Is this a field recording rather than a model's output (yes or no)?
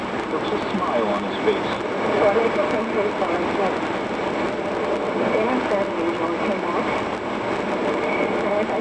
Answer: yes